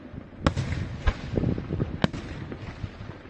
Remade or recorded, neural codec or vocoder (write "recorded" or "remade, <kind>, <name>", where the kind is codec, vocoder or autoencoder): recorded